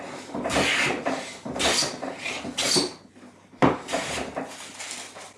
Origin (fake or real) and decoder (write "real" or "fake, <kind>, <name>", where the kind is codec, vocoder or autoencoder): real